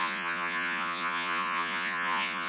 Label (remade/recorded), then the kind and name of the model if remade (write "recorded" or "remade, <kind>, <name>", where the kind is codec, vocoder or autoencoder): remade, vocoder, Vocos